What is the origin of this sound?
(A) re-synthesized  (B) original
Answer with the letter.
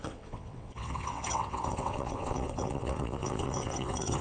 A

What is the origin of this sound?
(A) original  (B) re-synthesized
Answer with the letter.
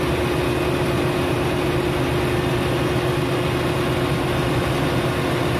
A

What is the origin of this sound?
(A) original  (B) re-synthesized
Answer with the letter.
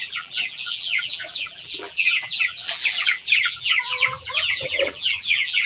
B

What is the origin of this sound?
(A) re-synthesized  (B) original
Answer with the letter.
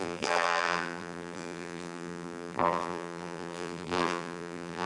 A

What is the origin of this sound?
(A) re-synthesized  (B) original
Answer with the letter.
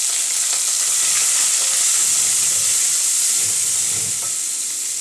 B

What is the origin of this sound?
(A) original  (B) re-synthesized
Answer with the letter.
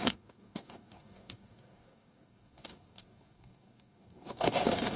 B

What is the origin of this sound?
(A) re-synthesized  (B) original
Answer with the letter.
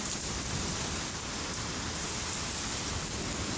B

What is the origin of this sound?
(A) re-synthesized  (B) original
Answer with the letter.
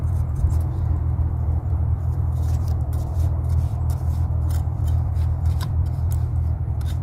A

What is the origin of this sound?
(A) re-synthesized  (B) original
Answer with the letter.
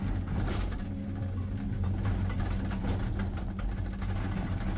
B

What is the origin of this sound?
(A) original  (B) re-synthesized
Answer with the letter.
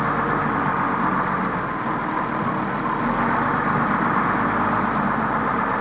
A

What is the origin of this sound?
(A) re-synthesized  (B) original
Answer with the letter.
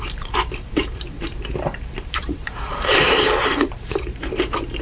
A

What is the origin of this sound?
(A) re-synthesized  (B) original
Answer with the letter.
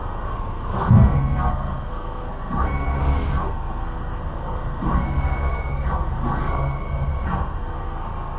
A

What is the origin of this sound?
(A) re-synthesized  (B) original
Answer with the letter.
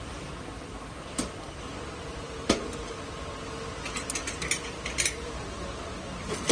B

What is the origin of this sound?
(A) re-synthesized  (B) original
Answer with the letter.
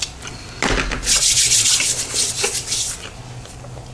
B